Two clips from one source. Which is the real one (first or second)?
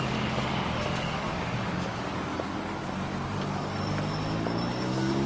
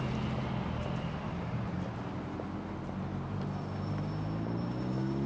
second